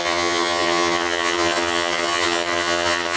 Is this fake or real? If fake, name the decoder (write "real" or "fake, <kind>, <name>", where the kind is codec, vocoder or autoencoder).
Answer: fake, vocoder, HiFi-GAN